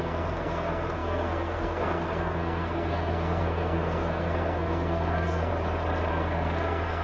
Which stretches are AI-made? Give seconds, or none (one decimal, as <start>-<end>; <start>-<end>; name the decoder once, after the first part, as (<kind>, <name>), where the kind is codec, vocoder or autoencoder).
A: 0.0-5.5 (codec, SNAC); 6.1-7.0